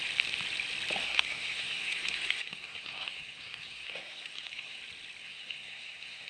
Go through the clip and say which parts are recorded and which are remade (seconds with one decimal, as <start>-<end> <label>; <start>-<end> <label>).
0.0-1.0 recorded; 1.0-4.8 remade; 4.8-5.2 recorded; 5.2-6.3 remade